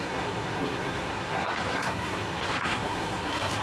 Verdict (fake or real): fake